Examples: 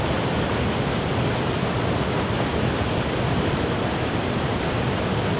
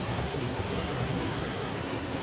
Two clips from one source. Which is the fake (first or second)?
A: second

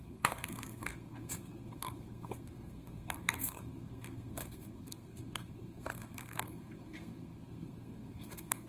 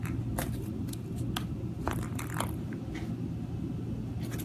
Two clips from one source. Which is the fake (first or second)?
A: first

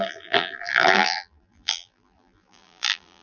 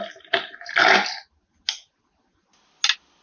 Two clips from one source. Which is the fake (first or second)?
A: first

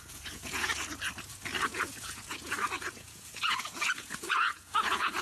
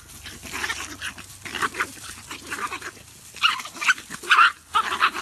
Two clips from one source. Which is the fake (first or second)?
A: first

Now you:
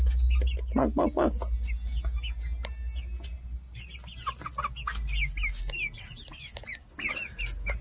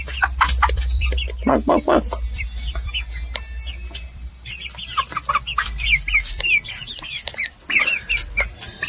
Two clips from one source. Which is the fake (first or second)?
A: second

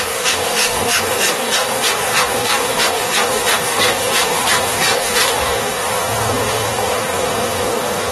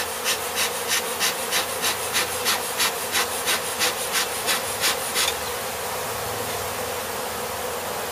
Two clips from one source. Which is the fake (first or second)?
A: first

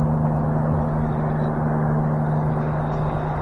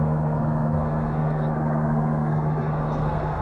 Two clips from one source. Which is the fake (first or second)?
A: second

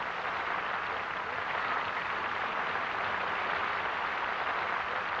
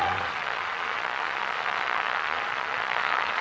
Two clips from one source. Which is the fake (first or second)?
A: second